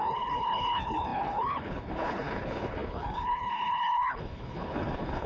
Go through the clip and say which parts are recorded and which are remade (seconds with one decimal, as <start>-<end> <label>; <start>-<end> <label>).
0.0-5.3 remade